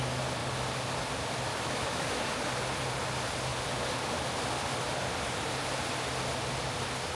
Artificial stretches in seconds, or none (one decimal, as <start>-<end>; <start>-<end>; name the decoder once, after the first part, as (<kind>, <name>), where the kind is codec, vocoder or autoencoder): 1.5-2.2 (autoencoder, DAC-VAE)